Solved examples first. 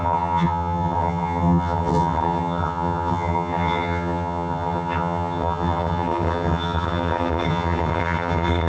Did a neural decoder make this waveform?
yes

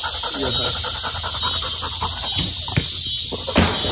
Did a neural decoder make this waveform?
no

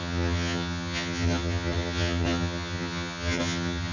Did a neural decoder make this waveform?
yes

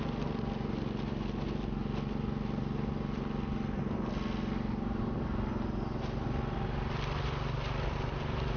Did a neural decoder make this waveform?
no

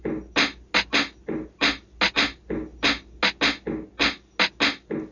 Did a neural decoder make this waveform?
no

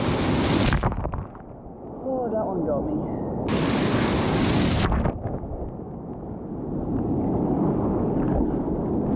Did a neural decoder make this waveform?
no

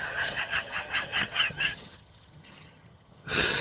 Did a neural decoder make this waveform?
yes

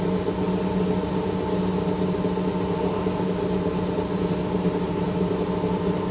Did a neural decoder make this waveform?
no